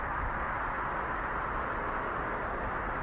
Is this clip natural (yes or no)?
yes